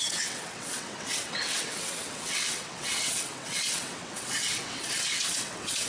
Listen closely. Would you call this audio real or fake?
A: fake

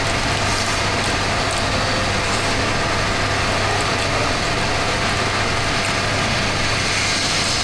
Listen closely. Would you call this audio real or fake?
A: real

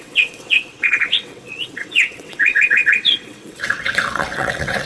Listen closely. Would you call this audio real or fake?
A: fake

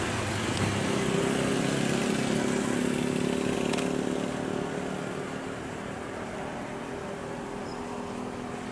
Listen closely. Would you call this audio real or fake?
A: real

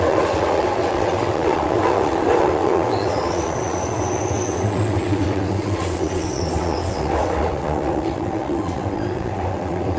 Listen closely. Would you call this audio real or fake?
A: fake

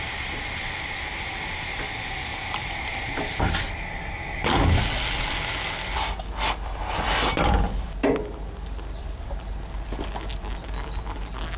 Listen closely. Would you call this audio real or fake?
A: real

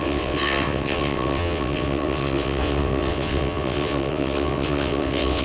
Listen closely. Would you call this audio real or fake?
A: fake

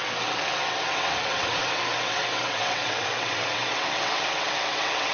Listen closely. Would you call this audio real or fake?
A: fake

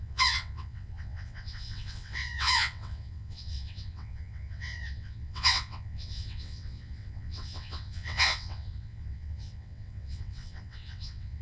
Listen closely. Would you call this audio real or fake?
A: fake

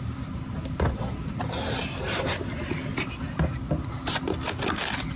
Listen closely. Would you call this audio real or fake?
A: real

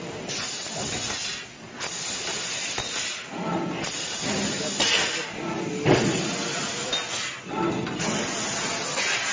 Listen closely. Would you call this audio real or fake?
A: real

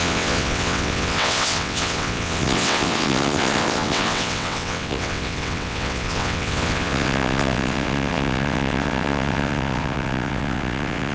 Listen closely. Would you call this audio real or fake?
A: fake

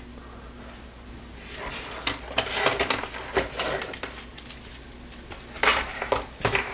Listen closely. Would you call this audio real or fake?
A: real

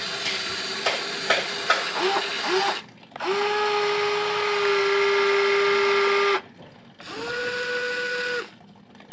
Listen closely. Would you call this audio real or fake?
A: real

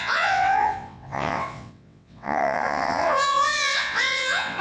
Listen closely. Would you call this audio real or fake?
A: fake